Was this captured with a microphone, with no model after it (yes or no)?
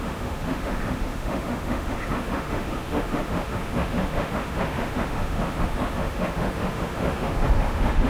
no